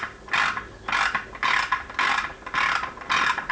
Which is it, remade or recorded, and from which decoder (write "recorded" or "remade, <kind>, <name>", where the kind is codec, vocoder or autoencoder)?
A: recorded